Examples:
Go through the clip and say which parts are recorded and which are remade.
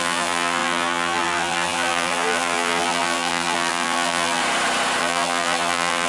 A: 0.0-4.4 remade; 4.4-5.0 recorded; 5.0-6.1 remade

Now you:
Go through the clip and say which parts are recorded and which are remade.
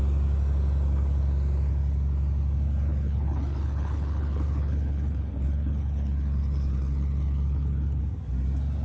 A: 0.0-2.9 recorded; 2.9-8.0 remade; 8.0-8.8 recorded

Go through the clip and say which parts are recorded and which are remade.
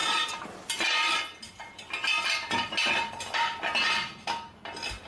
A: 0.0-5.1 recorded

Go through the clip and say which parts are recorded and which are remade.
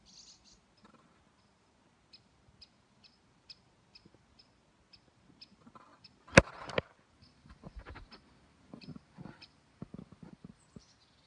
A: 0.0-11.3 recorded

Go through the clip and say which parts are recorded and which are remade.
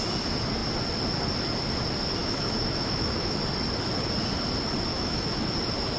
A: 0.0-2.2 recorded; 2.2-3.4 remade; 3.4-4.9 recorded; 4.9-5.4 remade; 5.4-6.0 recorded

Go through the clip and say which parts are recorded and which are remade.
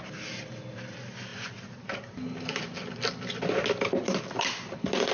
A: 0.0-5.1 recorded